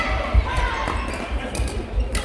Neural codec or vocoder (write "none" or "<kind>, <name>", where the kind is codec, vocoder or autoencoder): vocoder, BigVGAN v2